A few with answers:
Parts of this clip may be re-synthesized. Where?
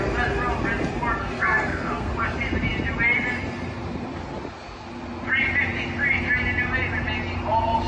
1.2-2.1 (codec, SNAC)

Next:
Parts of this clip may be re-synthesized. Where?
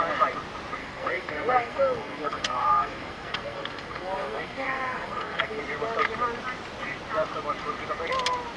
0.8-5.6 (codec, SNAC)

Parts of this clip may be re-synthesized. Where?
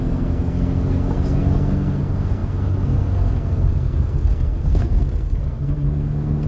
0.0-6.5 (codec, SNAC)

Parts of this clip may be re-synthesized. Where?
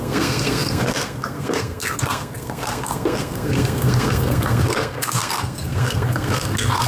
0.0-6.9 (codec, SNAC)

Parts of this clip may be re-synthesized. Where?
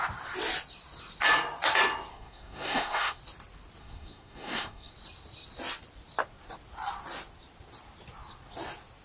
2.1-3.2 (codec, SNAC); 3.8-4.9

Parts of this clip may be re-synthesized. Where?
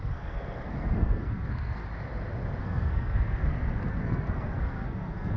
0.0-1.8 (codec, SNAC); 2.6-5.4